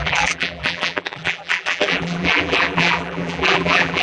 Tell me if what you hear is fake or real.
fake